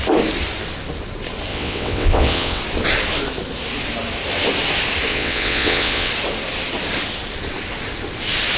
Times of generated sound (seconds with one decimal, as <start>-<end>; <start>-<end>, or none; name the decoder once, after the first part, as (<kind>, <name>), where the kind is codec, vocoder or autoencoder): 1.5-2.6 (vocoder, WaveNeXt); 5.1-6.1